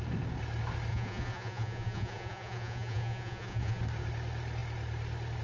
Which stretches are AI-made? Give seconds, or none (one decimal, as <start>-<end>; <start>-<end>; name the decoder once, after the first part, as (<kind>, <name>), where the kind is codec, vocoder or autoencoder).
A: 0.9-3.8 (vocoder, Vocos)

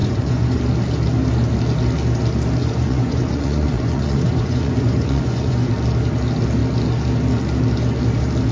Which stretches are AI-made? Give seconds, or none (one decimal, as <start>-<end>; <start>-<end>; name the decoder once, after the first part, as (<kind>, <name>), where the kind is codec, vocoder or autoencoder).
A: 0.0-0.6 (vocoder, Vocos); 2.6-5.7

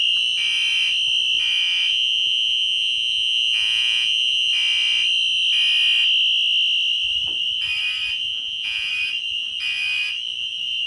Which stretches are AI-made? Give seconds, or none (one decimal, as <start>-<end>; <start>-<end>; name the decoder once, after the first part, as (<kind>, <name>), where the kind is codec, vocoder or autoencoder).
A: 1.9-4.5 (vocoder, Vocos); 8.3-8.9

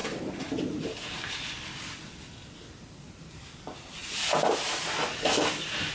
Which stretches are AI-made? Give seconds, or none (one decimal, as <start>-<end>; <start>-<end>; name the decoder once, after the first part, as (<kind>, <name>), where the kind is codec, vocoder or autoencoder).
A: none

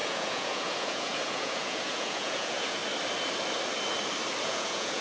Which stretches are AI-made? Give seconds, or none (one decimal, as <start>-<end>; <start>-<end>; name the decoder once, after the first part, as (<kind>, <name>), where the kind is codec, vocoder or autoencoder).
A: 0.0-2.8 (vocoder, Vocos); 4.4-5.0

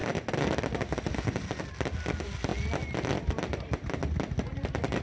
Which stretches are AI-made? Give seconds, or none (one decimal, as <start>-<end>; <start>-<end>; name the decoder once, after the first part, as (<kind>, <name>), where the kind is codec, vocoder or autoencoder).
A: none